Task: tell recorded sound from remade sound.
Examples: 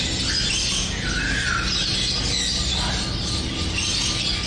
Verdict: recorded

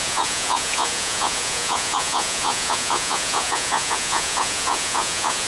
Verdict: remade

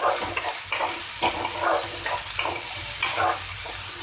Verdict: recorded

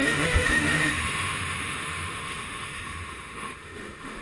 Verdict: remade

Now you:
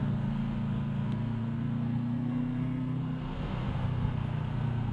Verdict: remade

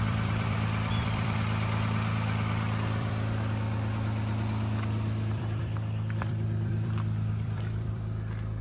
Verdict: remade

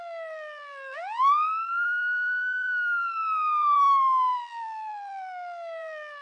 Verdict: remade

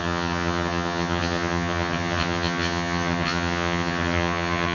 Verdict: remade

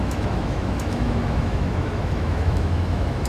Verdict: remade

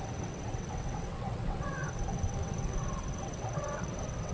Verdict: remade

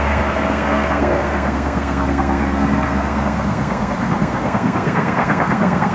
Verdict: remade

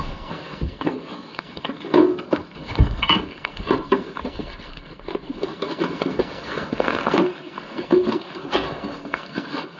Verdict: remade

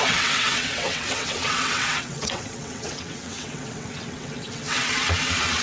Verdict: remade